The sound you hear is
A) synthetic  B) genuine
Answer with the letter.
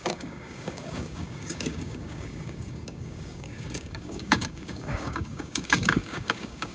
A